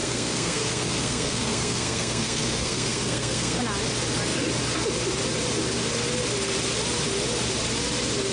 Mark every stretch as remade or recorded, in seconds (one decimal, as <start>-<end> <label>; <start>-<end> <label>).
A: 0.0-3.6 remade; 3.6-8.3 recorded